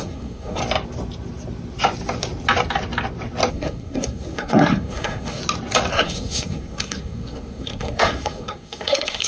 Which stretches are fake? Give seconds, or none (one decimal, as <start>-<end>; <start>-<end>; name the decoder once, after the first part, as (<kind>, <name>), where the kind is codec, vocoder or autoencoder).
0.0-0.6 (codec, SNAC); 3.5-5.4; 5.9-9.3